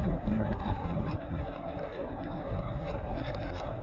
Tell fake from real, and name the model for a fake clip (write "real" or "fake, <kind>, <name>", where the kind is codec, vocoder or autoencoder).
fake, codec, SNAC